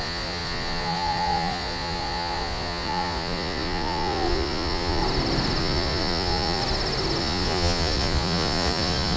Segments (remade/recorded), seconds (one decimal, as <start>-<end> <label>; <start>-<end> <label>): 0.0-5.0 remade; 5.0-5.6 recorded; 5.6-6.6 remade; 6.6-7.2 recorded; 7.2-9.2 remade